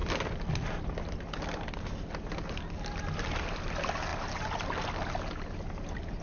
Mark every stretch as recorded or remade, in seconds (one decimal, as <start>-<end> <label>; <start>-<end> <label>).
0.0-6.2 recorded